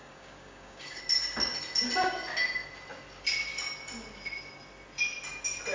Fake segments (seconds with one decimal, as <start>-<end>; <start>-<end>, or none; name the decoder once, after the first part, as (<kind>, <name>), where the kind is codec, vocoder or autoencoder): 0.0-1.0 (codec, DAC)